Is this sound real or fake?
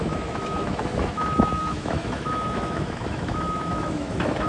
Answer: fake